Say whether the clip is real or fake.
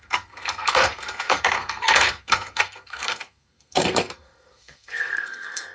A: fake